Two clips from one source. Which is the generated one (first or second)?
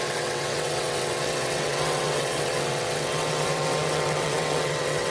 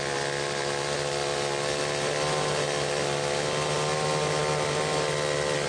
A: first